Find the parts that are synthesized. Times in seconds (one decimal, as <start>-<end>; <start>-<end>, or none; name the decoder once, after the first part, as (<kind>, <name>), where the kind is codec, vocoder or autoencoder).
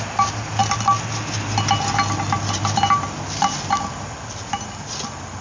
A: none